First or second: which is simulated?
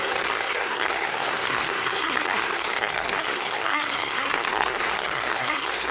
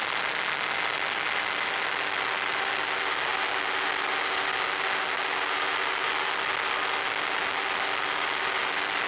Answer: first